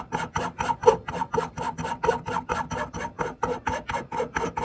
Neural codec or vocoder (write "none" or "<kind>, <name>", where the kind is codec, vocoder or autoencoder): none